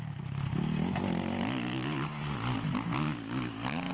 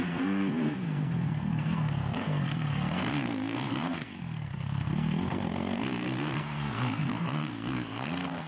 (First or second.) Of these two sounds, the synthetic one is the second